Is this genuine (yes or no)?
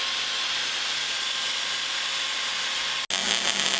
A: yes